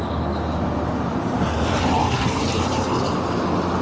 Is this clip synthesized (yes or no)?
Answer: no